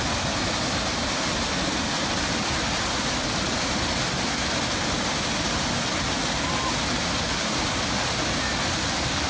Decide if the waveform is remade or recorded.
recorded